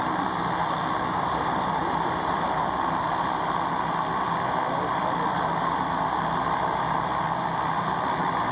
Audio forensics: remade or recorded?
recorded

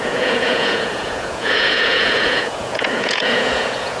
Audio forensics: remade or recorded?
remade